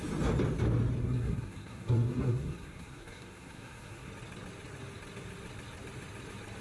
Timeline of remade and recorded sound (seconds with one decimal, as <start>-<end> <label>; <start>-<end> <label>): 0.0-1.0 recorded; 1.0-4.1 remade; 4.1-6.6 recorded